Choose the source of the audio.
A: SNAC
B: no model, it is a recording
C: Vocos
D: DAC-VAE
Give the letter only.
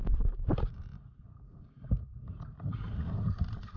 B